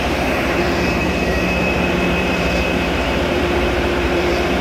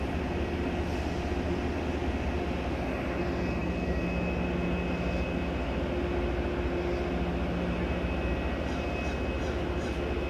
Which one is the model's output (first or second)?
first